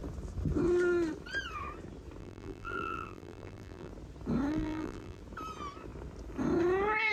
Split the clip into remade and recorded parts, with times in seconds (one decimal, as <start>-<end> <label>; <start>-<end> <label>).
0.0-2.2 recorded; 2.2-3.9 remade; 3.9-4.5 recorded; 4.5-5.2 remade; 5.2-7.1 recorded